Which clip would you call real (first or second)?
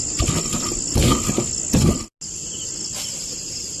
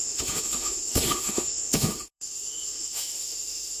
first